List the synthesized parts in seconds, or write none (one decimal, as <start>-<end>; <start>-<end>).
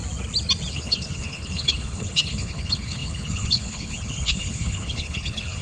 0.7-5.6